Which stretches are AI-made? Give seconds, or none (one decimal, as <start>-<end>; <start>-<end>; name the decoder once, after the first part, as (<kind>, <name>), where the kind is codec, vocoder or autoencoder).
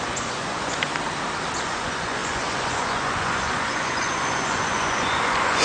0.0-0.9 (vocoder, Vocos); 1.6-5.6